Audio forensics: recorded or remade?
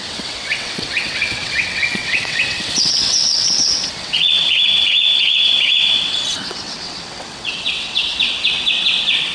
remade